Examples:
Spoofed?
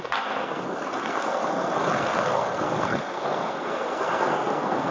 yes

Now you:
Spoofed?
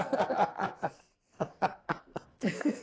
yes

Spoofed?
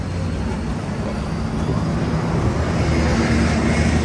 no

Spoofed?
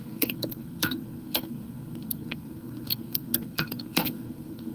yes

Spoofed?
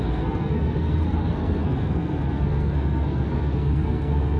yes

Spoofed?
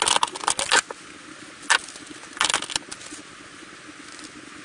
no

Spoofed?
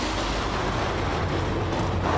no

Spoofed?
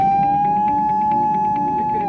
no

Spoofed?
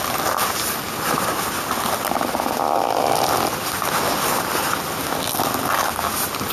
no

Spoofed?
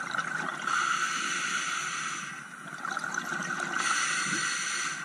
no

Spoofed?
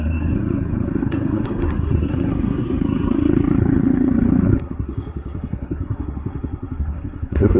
yes